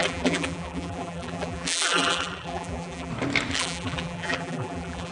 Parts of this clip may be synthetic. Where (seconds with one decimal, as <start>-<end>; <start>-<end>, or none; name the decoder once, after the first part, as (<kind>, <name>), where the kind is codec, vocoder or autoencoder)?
0.0-3.1 (vocoder, BigVGAN v2); 3.5-5.1